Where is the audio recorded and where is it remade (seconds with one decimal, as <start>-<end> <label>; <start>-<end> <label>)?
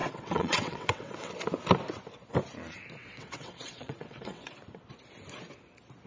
0.0-1.3 remade; 1.3-3.0 recorded; 3.0-4.5 remade; 4.5-6.1 recorded